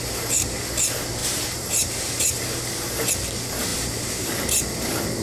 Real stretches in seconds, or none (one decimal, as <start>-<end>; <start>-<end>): 0.0-1.2; 2.4-3.7; 4.3-5.2